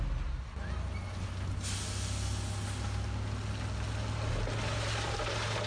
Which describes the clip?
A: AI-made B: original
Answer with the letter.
B